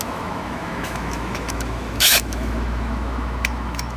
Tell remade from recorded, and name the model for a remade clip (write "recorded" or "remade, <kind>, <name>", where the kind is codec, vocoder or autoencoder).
remade, autoencoder, DAC-VAE